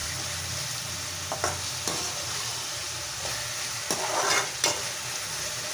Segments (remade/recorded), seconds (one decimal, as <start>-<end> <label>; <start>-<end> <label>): 0.0-0.8 remade; 0.8-2.5 recorded; 2.5-5.0 remade; 5.0-5.7 recorded